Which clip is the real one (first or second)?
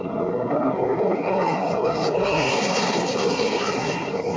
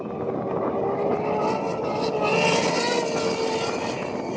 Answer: second